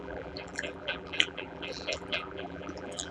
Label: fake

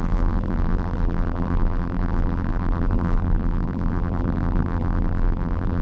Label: fake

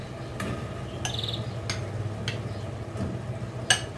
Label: real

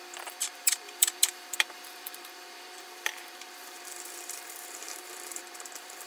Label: fake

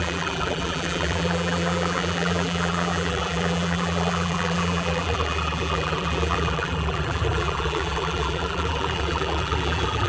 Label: fake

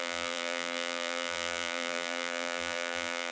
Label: fake